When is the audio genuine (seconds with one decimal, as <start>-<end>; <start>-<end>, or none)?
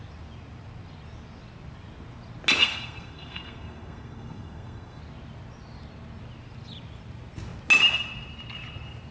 0.0-2.6; 5.0-9.1